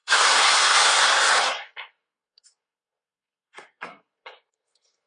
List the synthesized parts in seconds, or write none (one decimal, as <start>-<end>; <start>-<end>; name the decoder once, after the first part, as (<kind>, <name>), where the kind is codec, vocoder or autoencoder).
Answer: 0.0-5.1 (codec, SNAC)